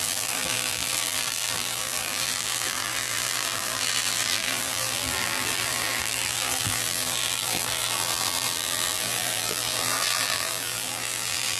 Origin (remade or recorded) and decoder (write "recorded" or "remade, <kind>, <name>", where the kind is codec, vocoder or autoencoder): remade, vocoder, BigVGAN v2